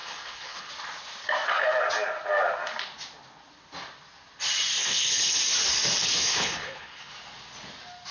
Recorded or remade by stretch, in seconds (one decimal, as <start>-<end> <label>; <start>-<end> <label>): 0.0-0.7 remade; 0.7-4.8 recorded; 4.8-5.4 remade; 5.4-6.0 recorded; 6.0-7.1 remade; 7.1-8.1 recorded